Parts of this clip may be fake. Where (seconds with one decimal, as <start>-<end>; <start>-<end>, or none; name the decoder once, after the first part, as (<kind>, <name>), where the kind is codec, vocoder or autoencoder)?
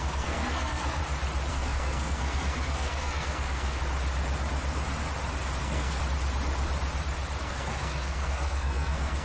0.0-1.0 (codec, SNAC); 1.5-3.8; 5.6-6.0; 7.4-9.2